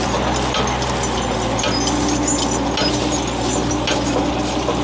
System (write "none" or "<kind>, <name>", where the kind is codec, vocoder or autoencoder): none